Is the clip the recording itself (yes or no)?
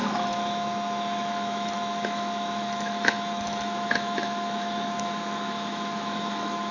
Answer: no